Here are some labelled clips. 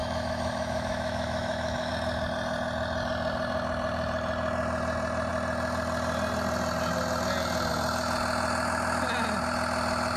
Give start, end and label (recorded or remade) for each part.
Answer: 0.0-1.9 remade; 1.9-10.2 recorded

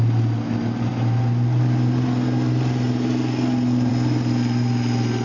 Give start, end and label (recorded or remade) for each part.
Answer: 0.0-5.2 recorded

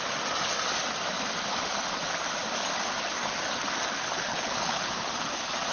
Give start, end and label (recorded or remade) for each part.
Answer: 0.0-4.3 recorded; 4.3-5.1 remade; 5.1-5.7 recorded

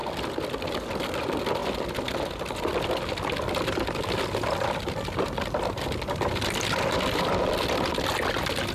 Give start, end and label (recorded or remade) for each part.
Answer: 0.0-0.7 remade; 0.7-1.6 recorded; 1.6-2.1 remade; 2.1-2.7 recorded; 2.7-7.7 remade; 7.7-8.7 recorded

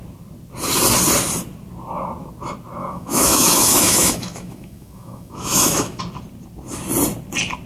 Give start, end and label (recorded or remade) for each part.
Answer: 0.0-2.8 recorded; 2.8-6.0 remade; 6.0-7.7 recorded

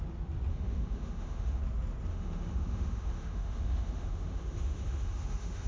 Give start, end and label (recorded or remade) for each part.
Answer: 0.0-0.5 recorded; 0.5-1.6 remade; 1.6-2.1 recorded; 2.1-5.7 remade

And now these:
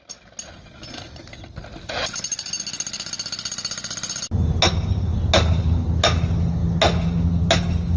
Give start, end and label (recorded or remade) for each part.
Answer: 0.0-8.0 recorded

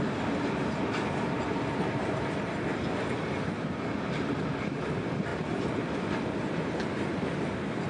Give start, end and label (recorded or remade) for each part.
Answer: 0.0-5.3 recorded; 5.3-7.4 remade; 7.4-7.9 recorded